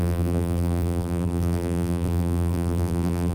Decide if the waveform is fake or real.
fake